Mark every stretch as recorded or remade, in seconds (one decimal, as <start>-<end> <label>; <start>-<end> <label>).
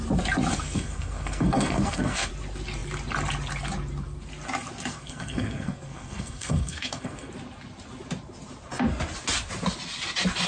0.0-0.5 recorded; 0.5-2.3 remade; 2.3-4.9 recorded; 4.9-7.3 remade; 7.3-10.5 recorded